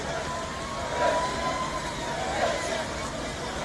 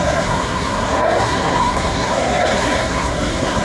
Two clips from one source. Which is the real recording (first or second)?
first